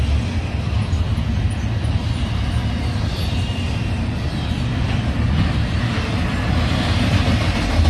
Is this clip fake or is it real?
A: real